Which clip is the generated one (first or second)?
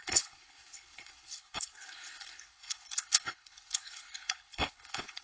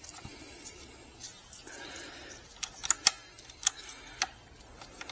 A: first